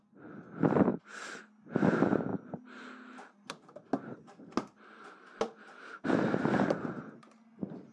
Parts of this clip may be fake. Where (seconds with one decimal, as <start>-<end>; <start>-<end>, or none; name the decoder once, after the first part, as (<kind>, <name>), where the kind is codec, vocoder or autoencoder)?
none